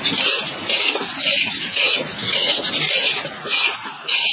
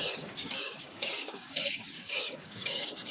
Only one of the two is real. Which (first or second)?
first